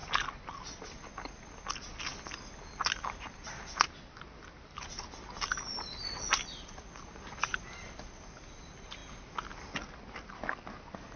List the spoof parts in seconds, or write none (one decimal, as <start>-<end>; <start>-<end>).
none